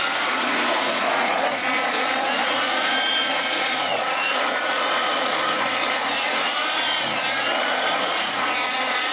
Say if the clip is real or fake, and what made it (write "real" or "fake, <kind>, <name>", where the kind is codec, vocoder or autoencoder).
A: fake, vocoder, Vocos